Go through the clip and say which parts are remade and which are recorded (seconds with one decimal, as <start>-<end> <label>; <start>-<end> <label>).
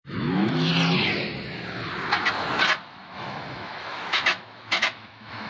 0.0-0.7 remade; 0.7-3.0 recorded; 3.0-5.5 remade